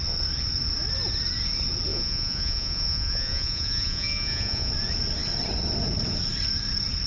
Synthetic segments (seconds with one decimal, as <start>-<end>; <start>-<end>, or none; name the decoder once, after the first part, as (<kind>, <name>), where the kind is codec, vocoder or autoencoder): 1.9-4.7 (vocoder, Vocos)